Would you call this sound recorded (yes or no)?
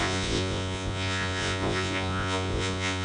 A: no